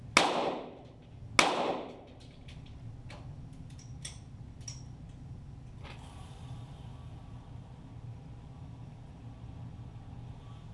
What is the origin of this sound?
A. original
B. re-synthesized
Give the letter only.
A